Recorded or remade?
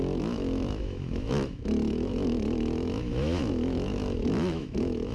remade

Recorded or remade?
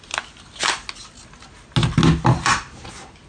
recorded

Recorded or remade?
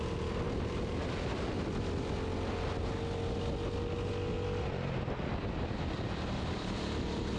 recorded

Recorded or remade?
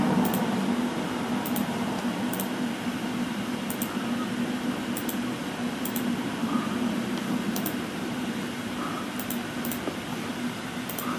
remade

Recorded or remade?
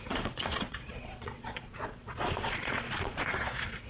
remade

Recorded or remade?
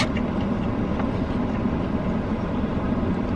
remade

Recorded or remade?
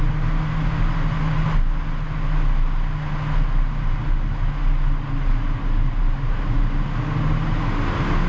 recorded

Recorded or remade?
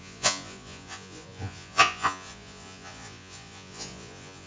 remade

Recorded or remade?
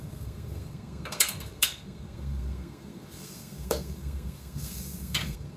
remade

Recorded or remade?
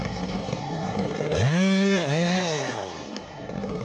remade